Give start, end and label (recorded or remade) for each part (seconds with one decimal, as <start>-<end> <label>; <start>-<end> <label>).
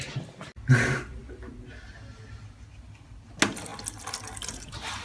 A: 0.0-5.0 recorded